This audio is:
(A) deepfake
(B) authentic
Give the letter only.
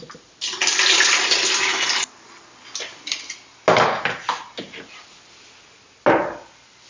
B